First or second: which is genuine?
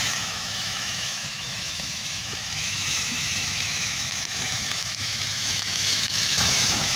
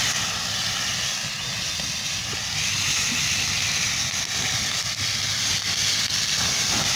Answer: second